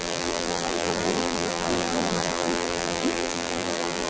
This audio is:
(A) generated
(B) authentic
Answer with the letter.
A